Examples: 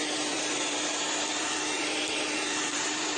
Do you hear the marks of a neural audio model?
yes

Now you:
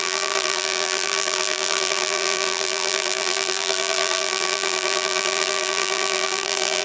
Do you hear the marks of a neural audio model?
yes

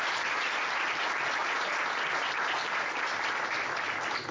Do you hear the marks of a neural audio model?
no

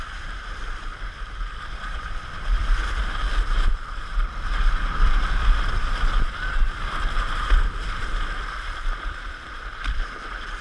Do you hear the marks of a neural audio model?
yes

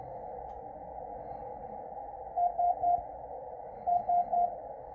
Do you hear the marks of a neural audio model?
no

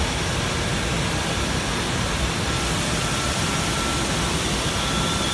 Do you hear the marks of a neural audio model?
no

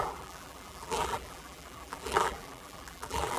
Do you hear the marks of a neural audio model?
yes